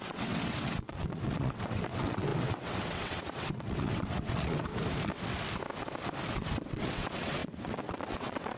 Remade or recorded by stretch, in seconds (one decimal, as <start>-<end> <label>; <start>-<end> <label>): 0.0-4.7 remade; 4.7-6.3 recorded; 6.3-8.6 remade